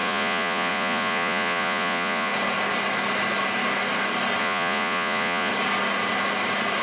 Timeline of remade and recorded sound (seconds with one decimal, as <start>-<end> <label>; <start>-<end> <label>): 0.0-2.3 remade; 2.3-4.4 recorded; 4.4-5.5 remade; 5.5-6.8 recorded